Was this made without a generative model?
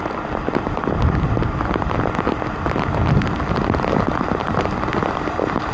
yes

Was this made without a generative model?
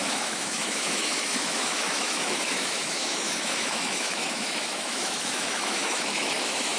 no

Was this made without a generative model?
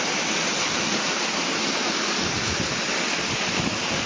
yes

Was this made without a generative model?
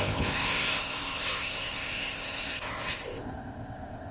no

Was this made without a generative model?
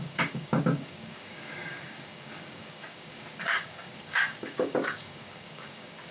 no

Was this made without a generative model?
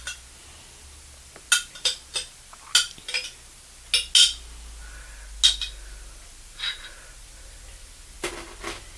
yes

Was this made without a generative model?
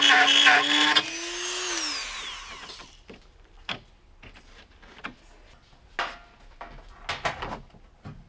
yes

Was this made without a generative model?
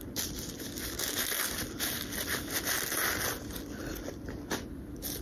yes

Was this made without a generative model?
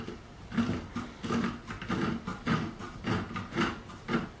yes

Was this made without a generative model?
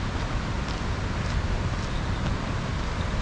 yes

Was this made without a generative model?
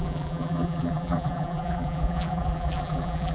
no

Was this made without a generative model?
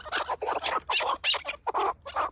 yes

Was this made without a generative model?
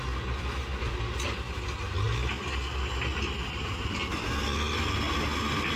yes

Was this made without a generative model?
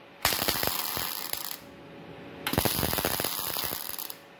yes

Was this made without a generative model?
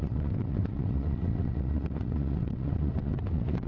no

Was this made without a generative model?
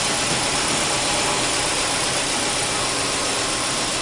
yes